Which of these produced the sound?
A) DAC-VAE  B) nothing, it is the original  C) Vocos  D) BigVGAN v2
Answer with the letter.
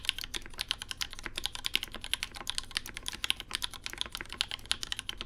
B